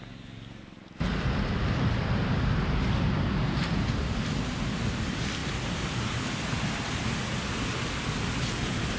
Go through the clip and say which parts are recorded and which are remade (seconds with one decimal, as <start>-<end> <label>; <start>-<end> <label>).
0.0-9.0 recorded